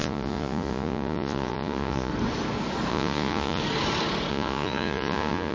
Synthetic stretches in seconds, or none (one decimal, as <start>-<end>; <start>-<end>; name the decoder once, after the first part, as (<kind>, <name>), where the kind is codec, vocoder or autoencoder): 0.0-2.1 (vocoder, Vocos); 2.9-3.6; 4.3-5.5